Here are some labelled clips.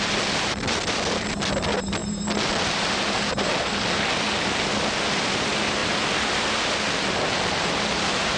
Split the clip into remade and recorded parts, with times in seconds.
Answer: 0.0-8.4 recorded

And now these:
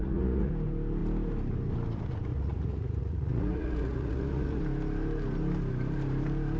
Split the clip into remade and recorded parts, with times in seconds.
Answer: 0.0-0.5 remade; 0.5-2.3 recorded; 2.3-4.6 remade; 4.6-6.6 recorded

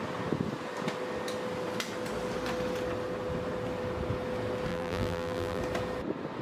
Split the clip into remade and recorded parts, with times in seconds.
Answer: 0.0-4.7 recorded; 4.7-5.6 remade; 5.6-6.4 recorded

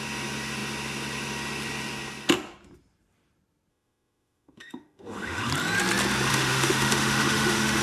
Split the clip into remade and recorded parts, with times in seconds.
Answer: 0.0-3.7 recorded; 3.7-5.5 remade; 5.5-6.3 recorded; 6.3-7.8 remade

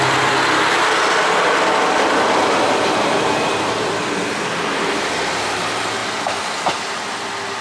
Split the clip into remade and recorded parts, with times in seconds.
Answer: 0.0-7.6 recorded

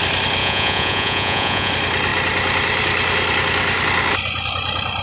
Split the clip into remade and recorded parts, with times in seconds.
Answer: 0.0-0.4 recorded; 0.4-1.7 remade; 1.7-5.0 recorded